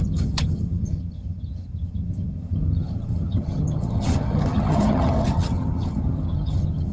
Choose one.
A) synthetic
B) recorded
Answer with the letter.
A